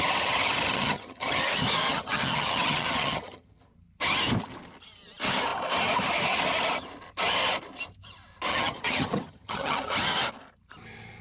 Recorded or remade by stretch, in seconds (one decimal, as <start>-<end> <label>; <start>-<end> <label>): 0.0-0.7 recorded; 0.7-1.4 remade; 1.4-1.9 recorded; 1.9-3.7 remade; 3.7-8.5 recorded; 8.5-9.9 remade; 9.9-11.2 recorded